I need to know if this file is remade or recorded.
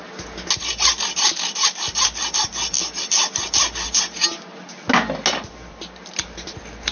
recorded